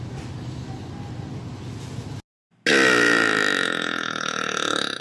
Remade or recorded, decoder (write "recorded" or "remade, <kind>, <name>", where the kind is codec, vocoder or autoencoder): recorded